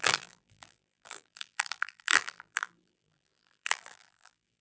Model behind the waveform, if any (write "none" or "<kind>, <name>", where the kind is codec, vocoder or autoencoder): vocoder, BigVGAN v2